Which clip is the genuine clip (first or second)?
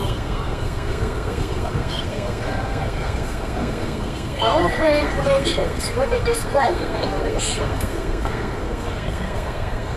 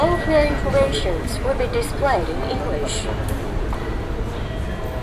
second